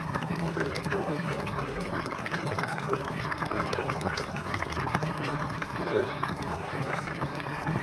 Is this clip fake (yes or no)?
yes